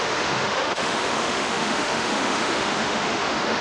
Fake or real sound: fake